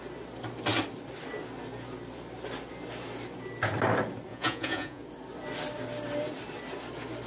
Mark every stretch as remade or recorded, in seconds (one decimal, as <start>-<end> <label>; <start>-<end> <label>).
0.0-4.3 recorded; 4.3-5.0 remade; 5.0-7.3 recorded